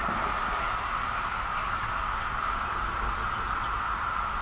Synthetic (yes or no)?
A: no